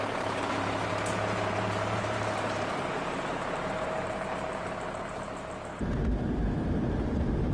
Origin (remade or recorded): remade